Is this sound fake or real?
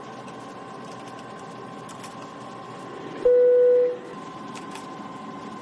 real